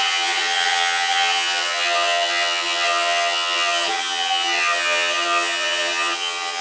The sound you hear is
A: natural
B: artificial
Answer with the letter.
B